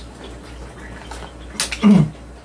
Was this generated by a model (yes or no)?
no